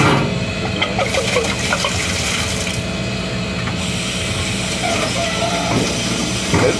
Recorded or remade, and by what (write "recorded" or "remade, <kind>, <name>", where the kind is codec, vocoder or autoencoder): recorded